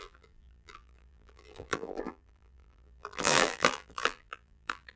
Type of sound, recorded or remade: remade